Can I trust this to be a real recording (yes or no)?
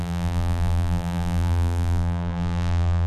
no